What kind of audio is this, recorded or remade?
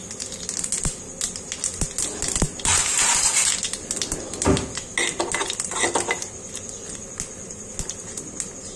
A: recorded